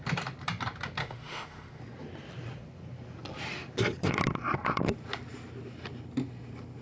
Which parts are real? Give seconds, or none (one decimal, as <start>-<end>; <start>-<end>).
0.0-1.0; 1.8-6.8

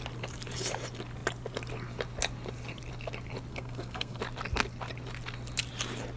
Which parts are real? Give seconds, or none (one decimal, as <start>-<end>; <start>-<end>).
0.0-3.5; 4.2-6.2

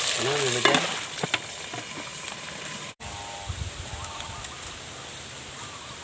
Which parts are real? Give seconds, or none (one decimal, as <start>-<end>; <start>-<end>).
0.0-2.1; 3.1-6.0

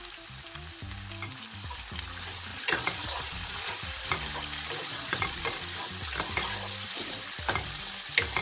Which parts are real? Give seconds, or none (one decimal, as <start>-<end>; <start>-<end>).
0.0-2.5; 3.7-4.8; 5.4-8.4